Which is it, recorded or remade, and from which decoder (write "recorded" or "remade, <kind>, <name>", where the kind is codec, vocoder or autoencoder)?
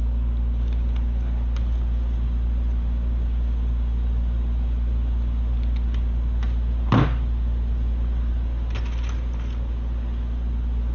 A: recorded